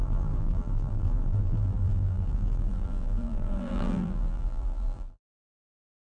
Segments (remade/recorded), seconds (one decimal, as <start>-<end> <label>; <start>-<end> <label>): 0.0-6.1 remade